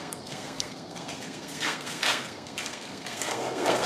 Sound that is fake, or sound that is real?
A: fake